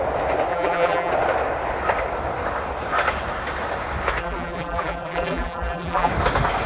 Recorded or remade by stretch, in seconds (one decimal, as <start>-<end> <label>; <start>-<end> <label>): 0.0-0.5 recorded; 0.5-1.1 remade; 1.1-4.2 recorded; 4.2-6.1 remade; 6.1-6.7 recorded